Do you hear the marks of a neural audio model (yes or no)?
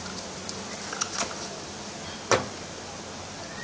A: no